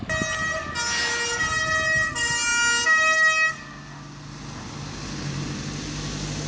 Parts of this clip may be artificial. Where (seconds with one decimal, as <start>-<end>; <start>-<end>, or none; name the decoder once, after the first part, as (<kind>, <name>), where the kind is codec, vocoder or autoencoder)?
none